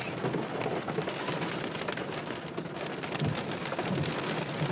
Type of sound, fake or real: real